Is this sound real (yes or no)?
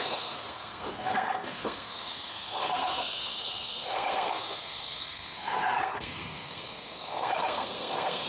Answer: no